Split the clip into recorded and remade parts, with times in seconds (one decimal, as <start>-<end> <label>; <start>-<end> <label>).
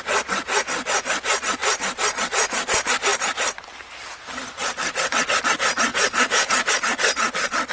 0.0-5.9 recorded; 5.9-6.7 remade; 6.7-7.7 recorded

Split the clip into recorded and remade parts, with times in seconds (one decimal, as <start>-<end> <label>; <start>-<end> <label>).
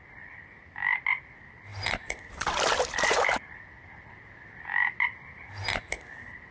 0.0-1.7 recorded; 1.7-4.6 remade; 4.6-6.5 recorded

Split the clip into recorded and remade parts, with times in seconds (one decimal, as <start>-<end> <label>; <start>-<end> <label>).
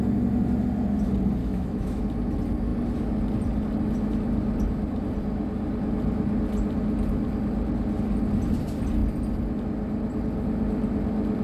0.0-1.4 recorded; 1.4-2.0 remade; 2.0-11.4 recorded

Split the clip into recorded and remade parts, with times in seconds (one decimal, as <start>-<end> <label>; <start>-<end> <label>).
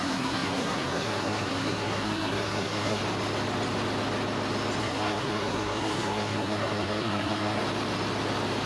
0.0-3.0 remade; 3.0-4.8 recorded; 4.8-7.6 remade; 7.6-8.7 recorded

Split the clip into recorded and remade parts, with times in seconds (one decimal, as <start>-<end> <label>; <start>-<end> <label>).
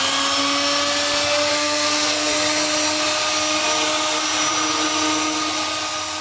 0.0-1.5 recorded; 1.5-2.3 remade; 2.3-6.2 recorded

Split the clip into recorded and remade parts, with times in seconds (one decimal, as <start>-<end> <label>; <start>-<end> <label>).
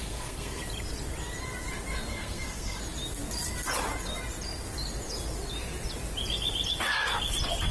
0.0-0.6 remade; 0.6-2.1 recorded; 2.1-2.8 remade; 2.8-7.7 recorded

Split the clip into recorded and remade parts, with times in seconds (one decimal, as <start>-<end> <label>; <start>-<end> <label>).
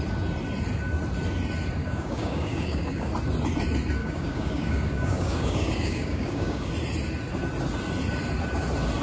0.0-1.8 recorded; 1.8-3.1 remade; 3.1-4.0 recorded; 4.0-6.7 remade; 6.7-9.0 recorded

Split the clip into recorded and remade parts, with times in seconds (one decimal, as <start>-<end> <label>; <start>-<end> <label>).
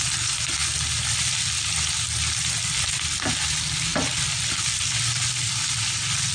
0.0-6.3 recorded